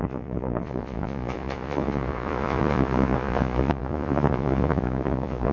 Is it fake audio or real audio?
fake